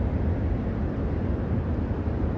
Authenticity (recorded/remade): recorded